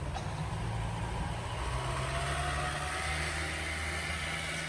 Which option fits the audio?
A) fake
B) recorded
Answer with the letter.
B